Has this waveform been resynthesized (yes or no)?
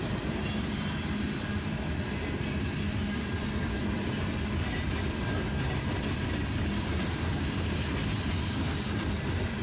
no